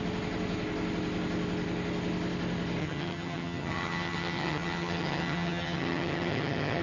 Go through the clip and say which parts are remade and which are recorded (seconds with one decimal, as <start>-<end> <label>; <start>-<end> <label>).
0.0-2.8 recorded; 2.8-6.8 remade